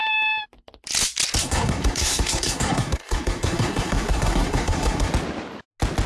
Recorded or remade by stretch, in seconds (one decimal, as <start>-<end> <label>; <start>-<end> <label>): 0.0-1.4 recorded; 1.4-5.1 remade; 5.1-6.1 recorded